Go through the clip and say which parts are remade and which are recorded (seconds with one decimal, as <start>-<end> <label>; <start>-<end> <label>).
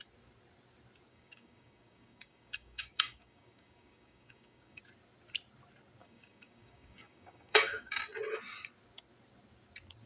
0.0-1.1 recorded; 1.1-4.8 remade; 4.8-6.0 recorded; 6.0-8.0 remade; 8.0-10.1 recorded